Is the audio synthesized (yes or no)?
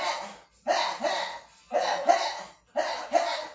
no